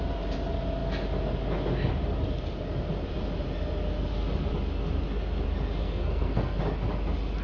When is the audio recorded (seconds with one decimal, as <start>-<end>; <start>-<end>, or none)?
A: 0.0-5.8; 6.6-7.4

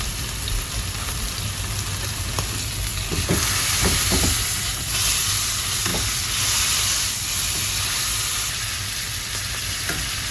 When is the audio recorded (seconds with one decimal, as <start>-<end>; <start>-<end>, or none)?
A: 0.0-10.3

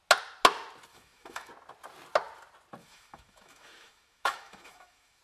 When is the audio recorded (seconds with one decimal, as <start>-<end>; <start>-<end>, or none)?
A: 0.0-0.9; 1.5-2.8

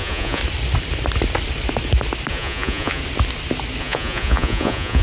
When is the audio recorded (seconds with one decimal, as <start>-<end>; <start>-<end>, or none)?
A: 0.4-2.3; 3.0-3.8

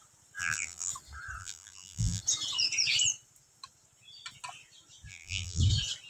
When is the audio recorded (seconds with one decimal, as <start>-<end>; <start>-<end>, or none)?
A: 0.0-0.4; 0.9-1.4; 2.2-5.1; 5.6-6.1

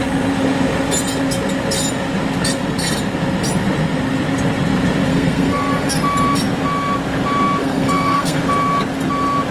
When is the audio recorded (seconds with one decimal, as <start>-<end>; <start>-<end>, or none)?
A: 0.0-5.1; 6.0-7.6; 8.4-9.5